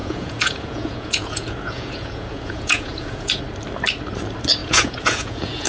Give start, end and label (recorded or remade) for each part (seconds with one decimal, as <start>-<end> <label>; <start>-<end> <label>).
0.0-3.4 remade; 3.4-4.6 recorded; 4.6-5.7 remade